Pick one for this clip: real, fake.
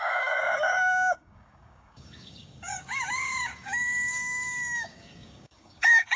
fake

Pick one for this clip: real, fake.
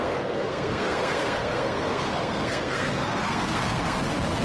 fake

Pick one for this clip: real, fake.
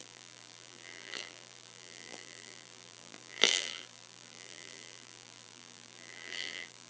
fake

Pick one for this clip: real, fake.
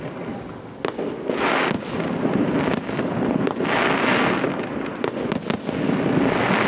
real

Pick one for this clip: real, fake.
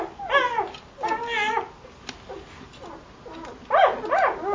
real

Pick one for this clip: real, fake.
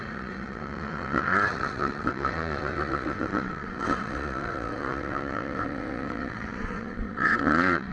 fake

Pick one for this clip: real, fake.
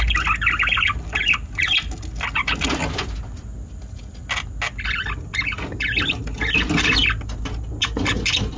real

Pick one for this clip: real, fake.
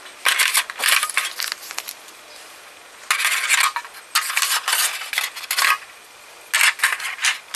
real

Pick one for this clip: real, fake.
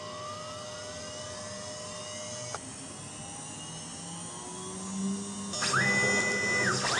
real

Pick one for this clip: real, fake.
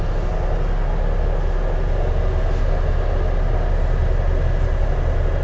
real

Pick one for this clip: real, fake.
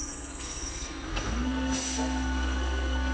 fake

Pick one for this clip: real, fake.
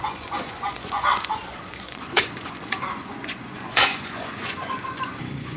fake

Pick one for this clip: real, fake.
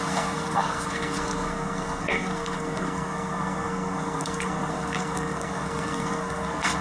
fake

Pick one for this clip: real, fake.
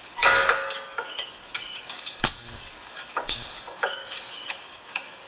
fake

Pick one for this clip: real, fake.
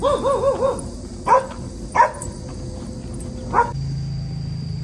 real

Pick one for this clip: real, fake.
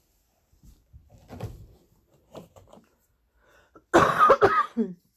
real